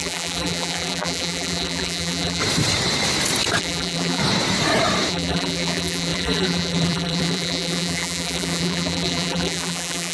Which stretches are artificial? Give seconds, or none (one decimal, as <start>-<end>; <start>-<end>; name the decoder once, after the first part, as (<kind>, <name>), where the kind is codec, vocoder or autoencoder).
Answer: 0.0-2.4 (vocoder, BigVGAN v2); 3.6-4.2; 5.1-10.1